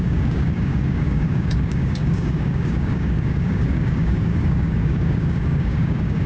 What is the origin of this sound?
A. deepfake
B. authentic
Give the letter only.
A